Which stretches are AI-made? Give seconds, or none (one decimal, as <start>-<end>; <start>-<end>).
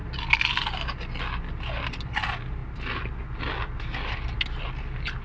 none